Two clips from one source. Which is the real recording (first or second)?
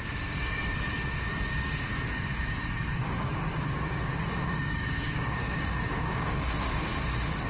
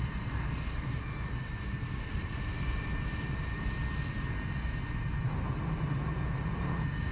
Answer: second